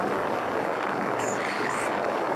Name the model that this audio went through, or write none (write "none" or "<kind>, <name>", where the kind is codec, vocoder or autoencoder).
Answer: codec, DAC